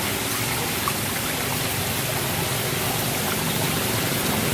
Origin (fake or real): real